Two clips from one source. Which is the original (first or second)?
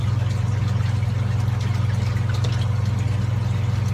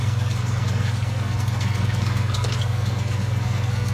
first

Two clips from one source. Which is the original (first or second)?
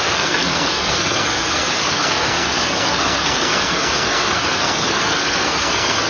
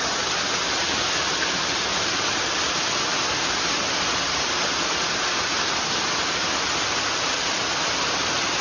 second